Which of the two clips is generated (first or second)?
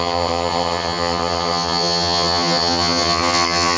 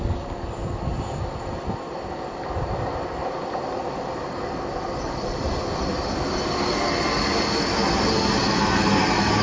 first